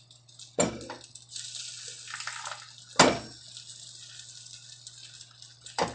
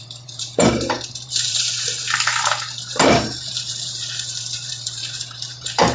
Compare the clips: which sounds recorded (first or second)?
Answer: first